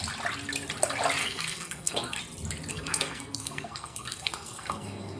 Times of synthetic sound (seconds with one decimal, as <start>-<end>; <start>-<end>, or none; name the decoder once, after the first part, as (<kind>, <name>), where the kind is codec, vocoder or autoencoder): 1.2-2.2 (codec, SNAC); 2.7-5.2